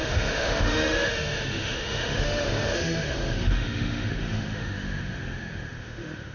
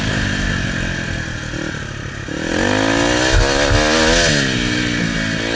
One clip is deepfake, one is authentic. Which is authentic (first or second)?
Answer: second